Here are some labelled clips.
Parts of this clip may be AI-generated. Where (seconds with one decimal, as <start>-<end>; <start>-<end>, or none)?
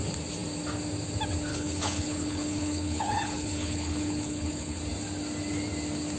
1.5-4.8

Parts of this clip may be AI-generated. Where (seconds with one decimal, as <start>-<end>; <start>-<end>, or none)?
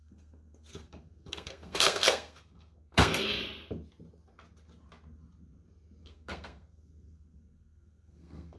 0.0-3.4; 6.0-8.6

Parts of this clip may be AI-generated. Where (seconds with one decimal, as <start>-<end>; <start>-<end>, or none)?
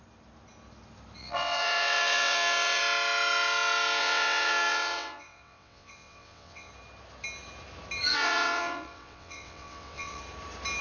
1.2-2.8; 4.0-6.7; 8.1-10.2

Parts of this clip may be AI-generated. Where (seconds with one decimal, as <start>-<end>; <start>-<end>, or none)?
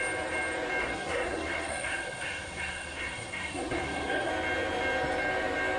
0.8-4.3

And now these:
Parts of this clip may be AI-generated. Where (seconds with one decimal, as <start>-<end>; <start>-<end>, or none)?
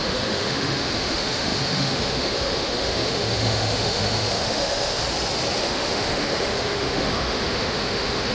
0.0-5.0; 5.6-8.3